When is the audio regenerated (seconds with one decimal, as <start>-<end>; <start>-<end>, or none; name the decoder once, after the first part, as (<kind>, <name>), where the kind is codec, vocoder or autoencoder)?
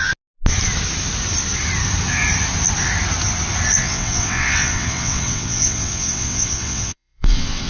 3.8-7.7 (vocoder, WaveNeXt)